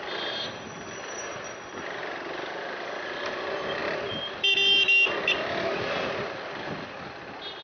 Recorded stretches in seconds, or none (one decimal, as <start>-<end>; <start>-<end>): 0.0-7.6